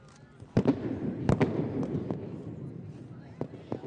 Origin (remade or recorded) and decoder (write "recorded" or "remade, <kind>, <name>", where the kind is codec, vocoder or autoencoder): recorded